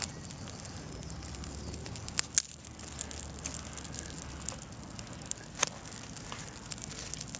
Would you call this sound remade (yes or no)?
no